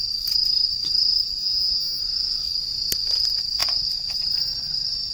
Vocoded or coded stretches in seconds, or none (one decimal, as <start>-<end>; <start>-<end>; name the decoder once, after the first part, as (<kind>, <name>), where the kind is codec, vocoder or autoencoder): 1.4-2.0 (vocoder, Vocos)